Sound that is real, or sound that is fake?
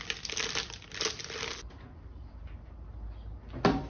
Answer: real